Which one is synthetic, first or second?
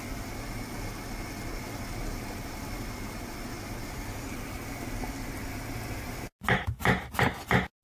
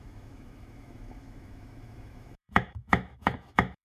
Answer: second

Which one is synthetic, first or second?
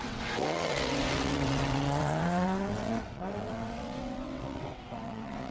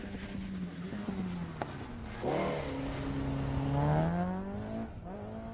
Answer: first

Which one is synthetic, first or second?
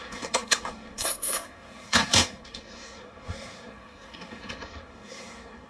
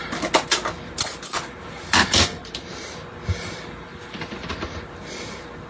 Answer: first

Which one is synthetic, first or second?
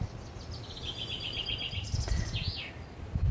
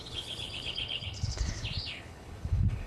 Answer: second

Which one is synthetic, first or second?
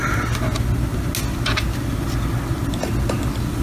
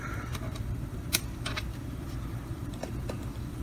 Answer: second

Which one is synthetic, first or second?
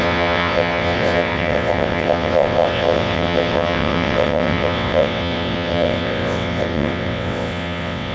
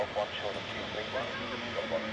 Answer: first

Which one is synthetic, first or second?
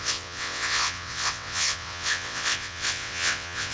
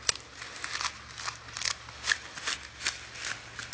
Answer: first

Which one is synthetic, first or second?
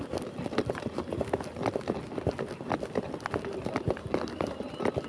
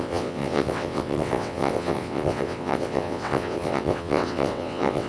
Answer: second